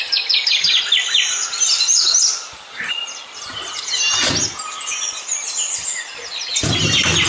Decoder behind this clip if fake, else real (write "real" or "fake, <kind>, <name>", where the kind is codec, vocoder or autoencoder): real